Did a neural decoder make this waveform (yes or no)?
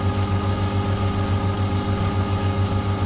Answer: no